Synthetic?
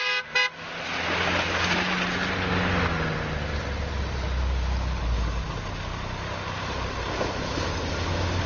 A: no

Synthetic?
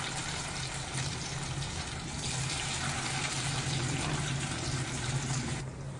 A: yes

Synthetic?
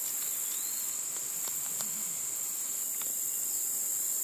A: no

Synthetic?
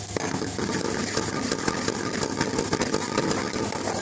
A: no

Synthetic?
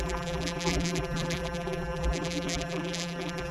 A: yes